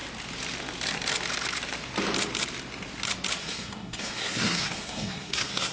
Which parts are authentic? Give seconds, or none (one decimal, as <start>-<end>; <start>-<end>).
0.0-3.4